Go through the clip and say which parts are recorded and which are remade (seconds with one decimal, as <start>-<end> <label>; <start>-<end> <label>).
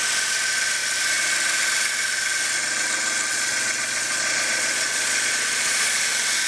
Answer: 0.0-3.3 recorded; 3.3-6.0 remade; 6.0-6.5 recorded